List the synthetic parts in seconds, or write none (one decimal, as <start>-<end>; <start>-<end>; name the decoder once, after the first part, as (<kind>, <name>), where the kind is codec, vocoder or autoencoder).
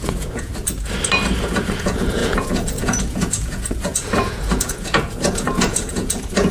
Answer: 0.0-0.5 (vocoder, Vocos); 1.4-6.5